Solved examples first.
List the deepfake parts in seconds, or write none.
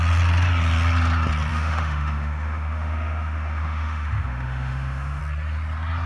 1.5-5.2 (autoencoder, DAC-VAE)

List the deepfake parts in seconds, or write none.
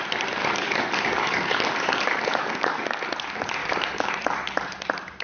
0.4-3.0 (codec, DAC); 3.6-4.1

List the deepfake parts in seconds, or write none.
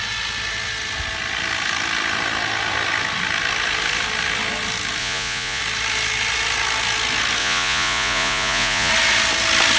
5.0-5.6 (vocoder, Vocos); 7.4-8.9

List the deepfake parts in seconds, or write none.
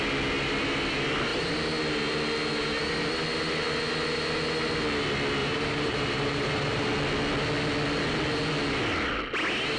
5.4-6.9 (vocoder, BigVGAN v2)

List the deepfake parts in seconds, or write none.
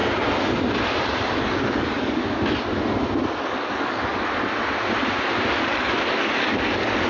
1.3-2.2 (codec, DAC); 3.4-4.1; 5.5-7.1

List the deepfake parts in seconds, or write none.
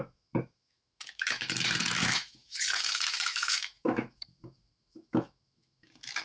0.0-6.2 (autoencoder, DAC-VAE)